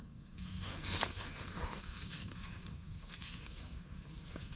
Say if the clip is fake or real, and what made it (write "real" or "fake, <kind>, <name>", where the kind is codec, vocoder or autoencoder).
fake, codec, SNAC